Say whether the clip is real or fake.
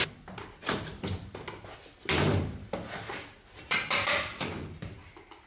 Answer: real